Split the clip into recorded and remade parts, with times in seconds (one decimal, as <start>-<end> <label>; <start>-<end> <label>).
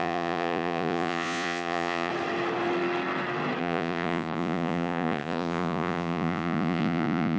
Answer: 0.0-2.1 remade; 2.1-3.6 recorded; 3.6-7.4 remade